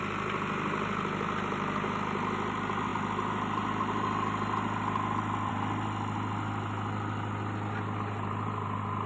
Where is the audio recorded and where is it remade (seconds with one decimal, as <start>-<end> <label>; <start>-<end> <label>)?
0.0-9.1 recorded